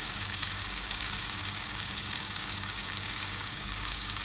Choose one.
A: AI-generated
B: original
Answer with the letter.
A